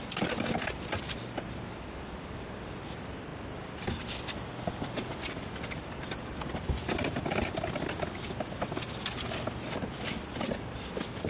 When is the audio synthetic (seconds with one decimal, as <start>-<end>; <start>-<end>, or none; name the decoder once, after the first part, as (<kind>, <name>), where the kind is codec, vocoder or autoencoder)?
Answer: none